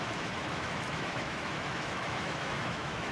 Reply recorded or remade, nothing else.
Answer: remade